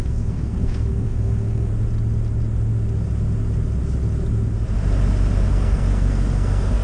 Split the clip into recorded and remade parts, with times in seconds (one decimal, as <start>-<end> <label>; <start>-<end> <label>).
0.0-1.7 remade; 1.7-5.5 recorded; 5.5-6.8 remade